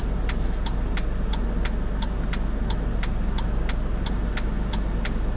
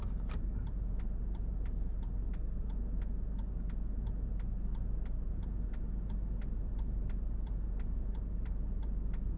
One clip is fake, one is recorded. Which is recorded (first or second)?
first